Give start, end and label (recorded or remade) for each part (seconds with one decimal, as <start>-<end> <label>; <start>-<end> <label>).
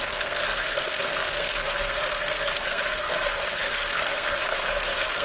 0.0-5.2 remade